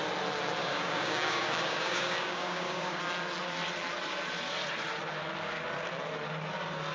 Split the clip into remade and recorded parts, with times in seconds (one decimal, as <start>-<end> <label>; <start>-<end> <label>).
0.0-0.6 recorded; 0.6-3.0 remade; 3.0-6.9 recorded